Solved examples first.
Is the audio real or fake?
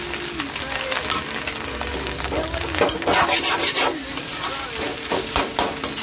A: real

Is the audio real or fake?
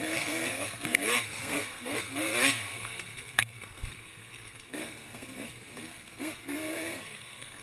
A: fake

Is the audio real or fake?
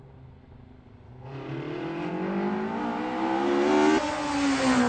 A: real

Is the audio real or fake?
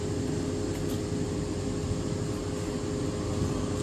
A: real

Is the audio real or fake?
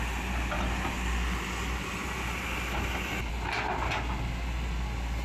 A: real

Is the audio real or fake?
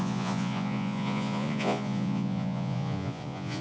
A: fake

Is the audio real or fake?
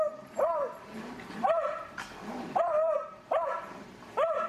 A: fake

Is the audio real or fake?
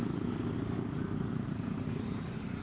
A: fake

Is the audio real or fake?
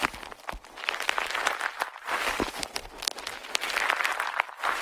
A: real